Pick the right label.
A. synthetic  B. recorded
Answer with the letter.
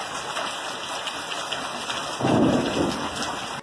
B